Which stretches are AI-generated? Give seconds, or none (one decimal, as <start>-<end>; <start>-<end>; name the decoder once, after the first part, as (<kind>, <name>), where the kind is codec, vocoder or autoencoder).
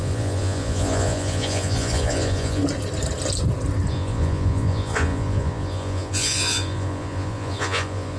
0.0-2.6 (vocoder, Vocos); 3.9-8.2